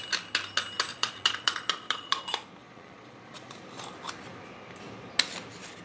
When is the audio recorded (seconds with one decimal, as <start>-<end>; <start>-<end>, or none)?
0.0-0.9; 2.2-2.6; 3.6-5.8